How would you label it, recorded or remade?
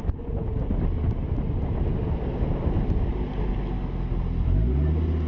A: recorded